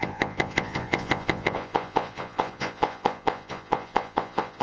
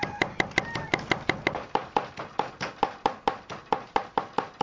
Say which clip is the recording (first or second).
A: second